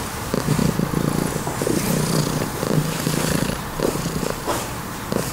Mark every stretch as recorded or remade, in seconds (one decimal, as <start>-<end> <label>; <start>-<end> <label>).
0.0-0.6 remade; 0.6-2.9 recorded; 2.9-5.3 remade